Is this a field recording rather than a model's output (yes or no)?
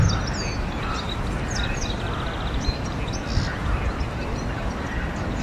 yes